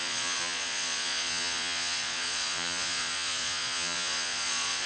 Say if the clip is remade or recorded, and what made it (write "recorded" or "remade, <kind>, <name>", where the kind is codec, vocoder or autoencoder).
remade, vocoder, Vocos